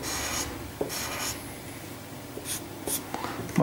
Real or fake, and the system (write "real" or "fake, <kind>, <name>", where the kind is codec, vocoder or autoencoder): real